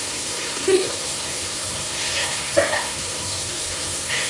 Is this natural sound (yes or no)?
no